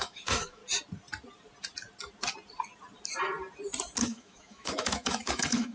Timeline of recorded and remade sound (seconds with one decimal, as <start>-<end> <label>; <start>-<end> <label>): 0.0-0.6 remade; 0.6-4.0 recorded; 4.0-5.7 remade